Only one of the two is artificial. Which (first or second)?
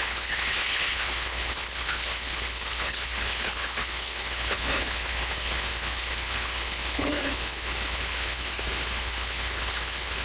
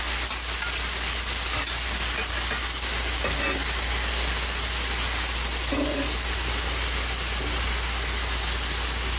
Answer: first